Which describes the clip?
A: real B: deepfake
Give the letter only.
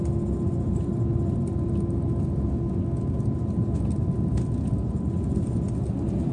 A